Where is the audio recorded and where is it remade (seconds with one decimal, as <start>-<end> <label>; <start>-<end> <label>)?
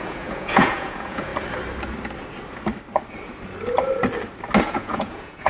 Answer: 0.0-1.3 remade; 1.3-4.6 recorded; 4.6-5.5 remade